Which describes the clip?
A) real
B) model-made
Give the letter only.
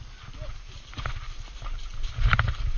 A